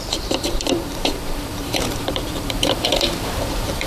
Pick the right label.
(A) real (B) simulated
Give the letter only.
B